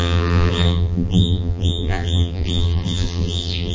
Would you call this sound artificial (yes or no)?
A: yes